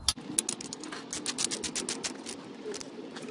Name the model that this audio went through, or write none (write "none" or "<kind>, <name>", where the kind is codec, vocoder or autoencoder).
none